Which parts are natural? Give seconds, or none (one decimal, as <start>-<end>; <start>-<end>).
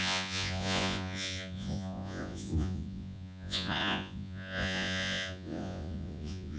none